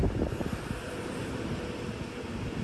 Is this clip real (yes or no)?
yes